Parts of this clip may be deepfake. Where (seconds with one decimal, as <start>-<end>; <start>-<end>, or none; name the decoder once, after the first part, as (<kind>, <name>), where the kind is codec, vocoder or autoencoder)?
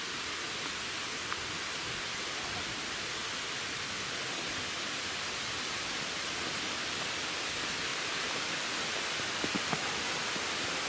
7.9-8.4 (vocoder, BigVGAN v2)